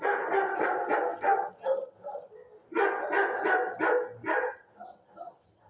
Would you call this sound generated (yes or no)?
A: no